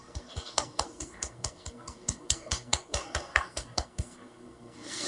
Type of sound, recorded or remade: remade